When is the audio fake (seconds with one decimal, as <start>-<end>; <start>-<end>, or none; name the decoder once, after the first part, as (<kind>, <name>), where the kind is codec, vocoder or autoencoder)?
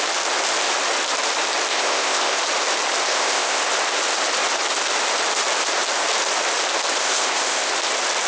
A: 1.7-2.4 (codec, ZipCodec); 3.1-3.6; 7.0-7.7